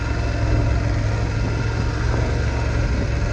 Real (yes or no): yes